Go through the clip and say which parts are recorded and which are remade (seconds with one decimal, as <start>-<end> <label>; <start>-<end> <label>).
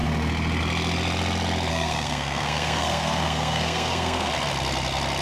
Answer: 0.0-1.7 recorded; 1.7-4.3 remade; 4.3-5.2 recorded